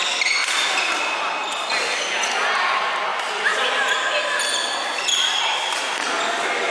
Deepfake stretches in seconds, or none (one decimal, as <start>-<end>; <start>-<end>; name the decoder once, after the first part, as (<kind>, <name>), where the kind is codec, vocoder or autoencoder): 3.1-3.7 (vocoder, BigVGAN v2)